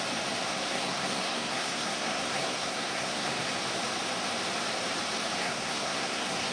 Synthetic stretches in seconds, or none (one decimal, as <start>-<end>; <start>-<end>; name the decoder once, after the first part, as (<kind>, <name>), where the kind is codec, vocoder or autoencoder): 0.5-3.5 (codec, SNAC); 5.4-6.5